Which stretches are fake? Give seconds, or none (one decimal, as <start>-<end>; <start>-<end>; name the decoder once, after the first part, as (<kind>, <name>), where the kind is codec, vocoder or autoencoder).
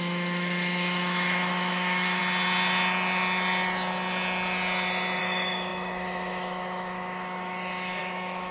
0.0-2.2 (autoencoder, DAC-VAE); 5.2-8.5